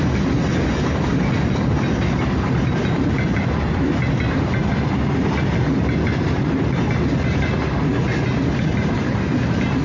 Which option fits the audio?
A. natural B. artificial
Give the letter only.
A